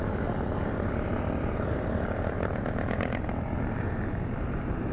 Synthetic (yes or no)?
yes